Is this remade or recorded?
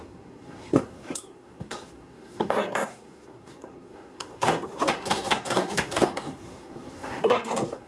remade